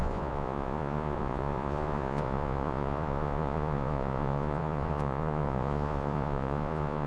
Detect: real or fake fake